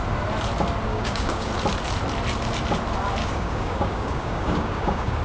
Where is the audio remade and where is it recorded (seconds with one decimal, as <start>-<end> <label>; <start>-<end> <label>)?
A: 0.0-0.9 recorded; 0.9-1.5 remade; 1.5-3.2 recorded; 3.2-5.2 remade